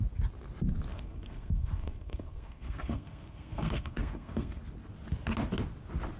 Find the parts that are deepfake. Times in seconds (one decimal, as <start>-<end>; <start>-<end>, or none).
0.9-4.6